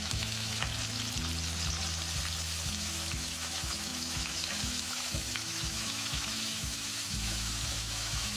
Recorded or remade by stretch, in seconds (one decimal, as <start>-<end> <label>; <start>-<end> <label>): 0.0-0.7 remade; 0.7-2.7 recorded; 2.7-8.4 remade